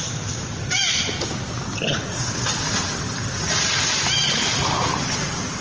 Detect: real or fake real